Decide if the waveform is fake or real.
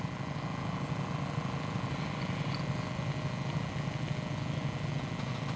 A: real